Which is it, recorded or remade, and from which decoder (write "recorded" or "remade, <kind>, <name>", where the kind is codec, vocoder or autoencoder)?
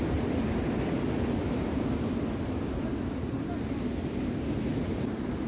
recorded